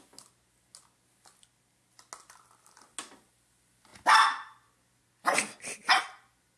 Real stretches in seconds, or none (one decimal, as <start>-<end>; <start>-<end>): 0.0-6.6